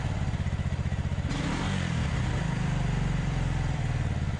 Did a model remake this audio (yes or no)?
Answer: yes